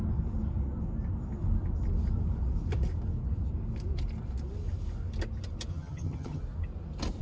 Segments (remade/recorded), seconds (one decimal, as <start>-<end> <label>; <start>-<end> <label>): 0.0-5.7 recorded; 5.7-6.4 remade; 6.4-7.2 recorded